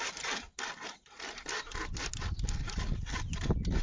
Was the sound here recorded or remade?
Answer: recorded